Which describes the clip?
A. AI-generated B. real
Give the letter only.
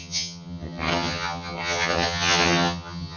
A